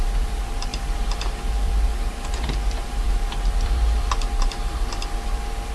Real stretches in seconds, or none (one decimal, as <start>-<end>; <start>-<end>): none